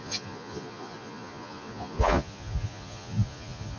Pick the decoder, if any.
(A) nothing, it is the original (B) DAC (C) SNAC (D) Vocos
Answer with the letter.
D